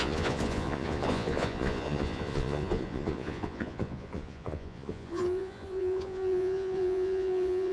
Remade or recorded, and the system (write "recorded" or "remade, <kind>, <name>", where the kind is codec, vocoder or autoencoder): remade, vocoder, Vocos